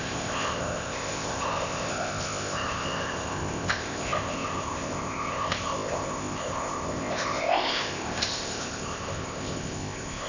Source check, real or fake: fake